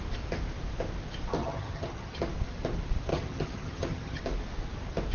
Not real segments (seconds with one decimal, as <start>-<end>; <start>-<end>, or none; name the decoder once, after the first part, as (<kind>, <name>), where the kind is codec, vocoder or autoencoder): 1.4-2.2 (vocoder, HiFi-GAN); 3.1-4.2

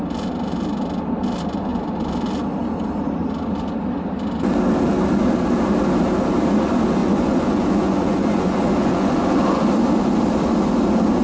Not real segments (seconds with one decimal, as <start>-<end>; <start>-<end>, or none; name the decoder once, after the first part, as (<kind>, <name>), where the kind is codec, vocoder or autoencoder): 7.0-9.7 (vocoder, Vocos)

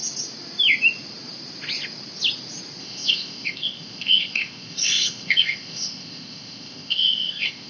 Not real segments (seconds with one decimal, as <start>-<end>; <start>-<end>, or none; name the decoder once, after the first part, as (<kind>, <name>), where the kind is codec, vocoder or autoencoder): 2.8-7.7 (codec, ZipCodec)

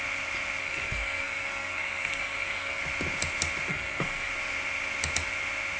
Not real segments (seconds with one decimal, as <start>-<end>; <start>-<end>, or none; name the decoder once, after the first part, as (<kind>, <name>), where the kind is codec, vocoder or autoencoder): 0.6-2.8 (codec, SNAC); 3.7-4.3

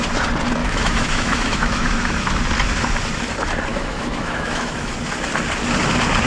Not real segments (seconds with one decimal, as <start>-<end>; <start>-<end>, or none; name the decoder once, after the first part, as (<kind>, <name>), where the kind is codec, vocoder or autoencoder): 0.6-2.3 (autoencoder, DAC-VAE); 3.7-4.9

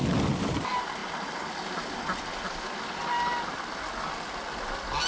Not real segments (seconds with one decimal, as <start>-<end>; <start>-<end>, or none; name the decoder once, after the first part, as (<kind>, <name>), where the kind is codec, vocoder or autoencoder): none

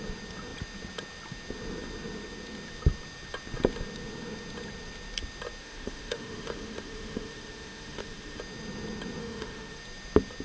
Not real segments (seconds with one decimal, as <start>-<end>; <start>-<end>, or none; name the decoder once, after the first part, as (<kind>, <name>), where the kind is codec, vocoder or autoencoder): 5.6-8.4 (autoencoder, DAC-VAE); 9.2-9.8

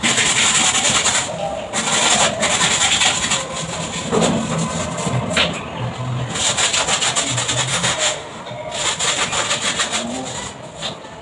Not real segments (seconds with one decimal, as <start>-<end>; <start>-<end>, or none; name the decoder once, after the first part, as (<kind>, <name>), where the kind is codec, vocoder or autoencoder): 7.7-8.4 (autoencoder, DAC-VAE)